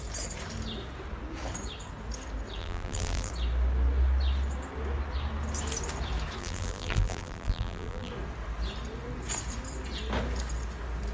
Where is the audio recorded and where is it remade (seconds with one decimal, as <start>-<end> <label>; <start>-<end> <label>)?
0.0-2.6 recorded; 2.6-3.3 remade; 3.3-6.4 recorded; 6.4-8.1 remade; 8.1-11.1 recorded